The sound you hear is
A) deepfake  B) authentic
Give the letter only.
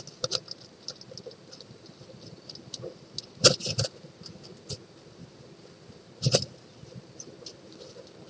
B